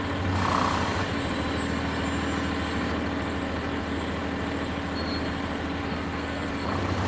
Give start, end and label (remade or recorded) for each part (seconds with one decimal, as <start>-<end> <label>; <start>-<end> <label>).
0.0-5.8 recorded; 5.8-6.5 remade; 6.5-7.1 recorded